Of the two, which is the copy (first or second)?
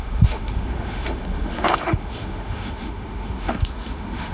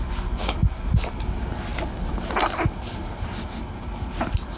first